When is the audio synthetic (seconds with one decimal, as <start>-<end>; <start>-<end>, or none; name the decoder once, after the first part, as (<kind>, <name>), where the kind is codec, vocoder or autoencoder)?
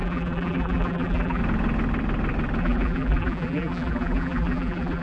0.0-1.4 (vocoder, BigVGAN v2); 2.6-5.0